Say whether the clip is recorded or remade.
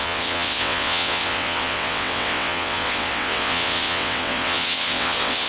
remade